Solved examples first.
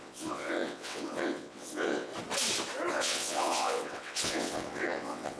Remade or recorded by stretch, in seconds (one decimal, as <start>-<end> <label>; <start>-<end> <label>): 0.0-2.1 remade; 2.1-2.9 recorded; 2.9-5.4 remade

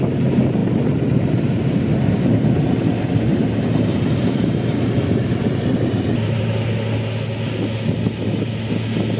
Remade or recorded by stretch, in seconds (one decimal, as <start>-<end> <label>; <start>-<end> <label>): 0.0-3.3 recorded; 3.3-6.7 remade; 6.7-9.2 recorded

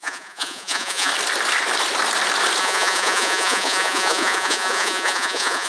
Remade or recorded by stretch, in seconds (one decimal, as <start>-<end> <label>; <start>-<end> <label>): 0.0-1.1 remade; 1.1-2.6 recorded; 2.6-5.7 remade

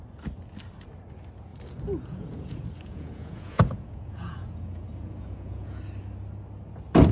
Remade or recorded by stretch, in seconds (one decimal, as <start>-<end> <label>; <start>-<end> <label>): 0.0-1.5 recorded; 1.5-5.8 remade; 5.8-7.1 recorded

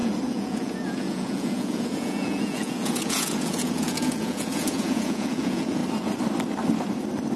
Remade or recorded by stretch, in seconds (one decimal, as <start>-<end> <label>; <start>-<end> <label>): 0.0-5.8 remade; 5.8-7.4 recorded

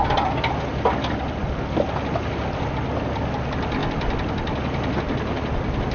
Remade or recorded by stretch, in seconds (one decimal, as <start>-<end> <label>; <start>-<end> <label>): 0.0-5.9 recorded

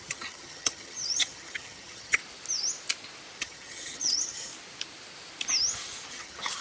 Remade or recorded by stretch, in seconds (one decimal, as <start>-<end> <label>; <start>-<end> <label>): 0.0-2.2 remade; 2.2-3.4 recorded; 3.4-4.5 remade; 4.5-6.1 recorded; 6.1-6.6 remade